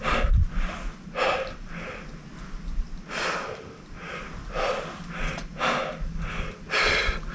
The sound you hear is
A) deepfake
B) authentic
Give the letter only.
B